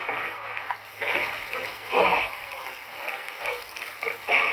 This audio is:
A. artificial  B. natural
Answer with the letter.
A